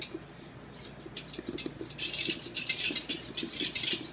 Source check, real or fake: real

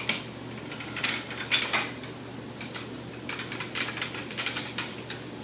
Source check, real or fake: real